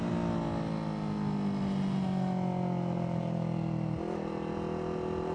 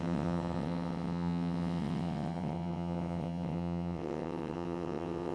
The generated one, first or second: second